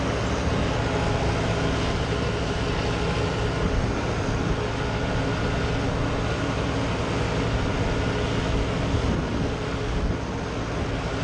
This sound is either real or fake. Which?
real